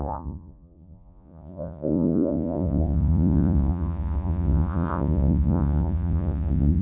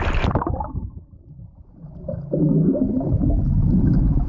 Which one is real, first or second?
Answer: second